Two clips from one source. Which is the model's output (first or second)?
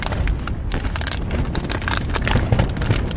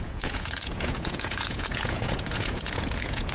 second